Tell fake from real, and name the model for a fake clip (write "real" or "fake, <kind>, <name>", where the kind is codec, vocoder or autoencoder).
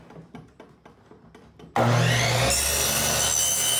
real